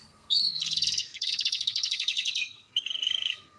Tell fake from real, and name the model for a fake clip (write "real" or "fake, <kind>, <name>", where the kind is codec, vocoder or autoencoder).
fake, codec, SNAC